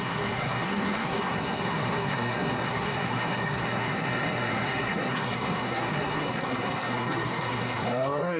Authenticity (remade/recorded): remade